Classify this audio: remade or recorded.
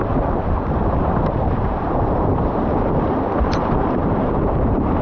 remade